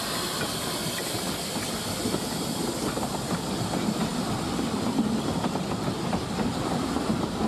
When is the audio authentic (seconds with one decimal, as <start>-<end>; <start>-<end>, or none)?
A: 0.0-7.5

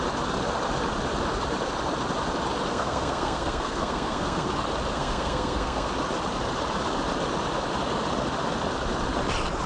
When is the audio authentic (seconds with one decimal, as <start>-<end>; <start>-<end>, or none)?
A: 0.0-2.7; 4.5-4.9; 5.9-9.7

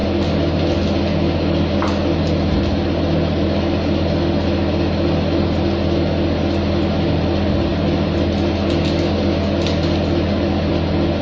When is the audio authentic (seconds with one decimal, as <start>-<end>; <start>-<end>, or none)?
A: 0.0-11.2

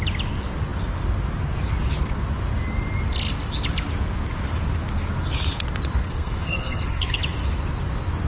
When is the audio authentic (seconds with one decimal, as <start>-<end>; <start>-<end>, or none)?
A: 0.0-6.0; 7.2-8.3

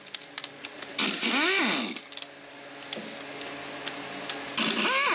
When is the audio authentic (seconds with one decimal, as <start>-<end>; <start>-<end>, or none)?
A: 0.0-5.1

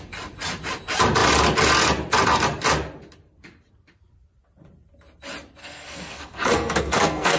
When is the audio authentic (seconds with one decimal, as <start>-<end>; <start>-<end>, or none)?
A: 0.0-5.6